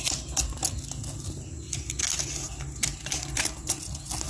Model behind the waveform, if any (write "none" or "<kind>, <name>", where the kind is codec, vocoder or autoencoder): none